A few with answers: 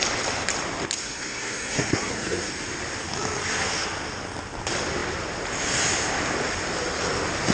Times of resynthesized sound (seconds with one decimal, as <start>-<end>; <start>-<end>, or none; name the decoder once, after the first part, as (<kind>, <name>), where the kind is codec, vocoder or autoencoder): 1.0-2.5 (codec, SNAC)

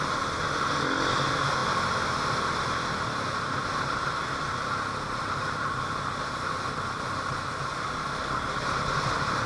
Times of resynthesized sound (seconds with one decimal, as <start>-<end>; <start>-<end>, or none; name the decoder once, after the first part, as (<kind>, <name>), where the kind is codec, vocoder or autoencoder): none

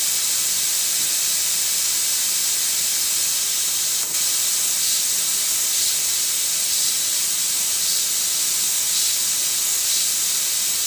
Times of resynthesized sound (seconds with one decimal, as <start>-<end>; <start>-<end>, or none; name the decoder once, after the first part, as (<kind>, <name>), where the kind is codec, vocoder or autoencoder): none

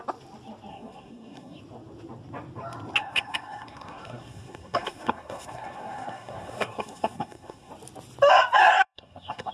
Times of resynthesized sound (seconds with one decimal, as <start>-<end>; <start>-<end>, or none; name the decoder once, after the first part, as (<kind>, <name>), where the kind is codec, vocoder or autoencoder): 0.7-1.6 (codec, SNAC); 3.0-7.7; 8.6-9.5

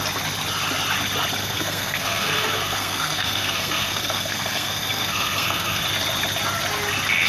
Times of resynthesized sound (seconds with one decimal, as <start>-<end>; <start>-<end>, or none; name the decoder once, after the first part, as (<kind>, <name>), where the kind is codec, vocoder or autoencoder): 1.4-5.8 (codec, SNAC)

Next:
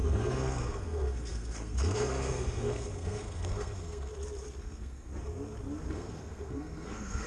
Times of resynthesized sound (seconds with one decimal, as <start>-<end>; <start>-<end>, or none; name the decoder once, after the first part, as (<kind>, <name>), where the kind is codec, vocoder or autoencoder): 0.0-4.1 (codec, SNAC); 4.6-5.1; 5.9-7.3

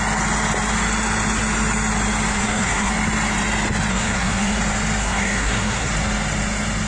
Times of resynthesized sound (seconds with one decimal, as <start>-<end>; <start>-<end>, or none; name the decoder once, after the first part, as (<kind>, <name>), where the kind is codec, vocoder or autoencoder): 2.3-2.9 (codec, SNAC); 3.9-4.6; 5.0-5.9

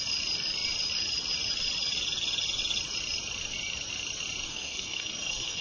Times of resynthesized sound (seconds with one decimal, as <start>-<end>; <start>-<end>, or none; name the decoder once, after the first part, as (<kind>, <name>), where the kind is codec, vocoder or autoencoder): 4.5-5.6 (codec, SNAC)